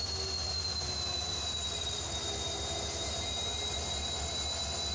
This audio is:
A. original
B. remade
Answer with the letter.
A